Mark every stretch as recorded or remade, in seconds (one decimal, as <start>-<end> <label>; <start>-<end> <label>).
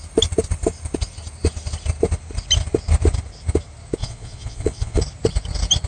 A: 0.0-4.0 recorded; 4.0-5.0 remade; 5.0-5.9 recorded